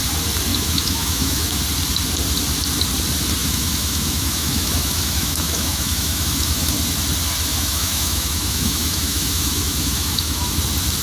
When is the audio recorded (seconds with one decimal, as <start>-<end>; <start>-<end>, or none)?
0.0-0.5; 1.6-3.4; 6.7-7.5; 10.5-11.0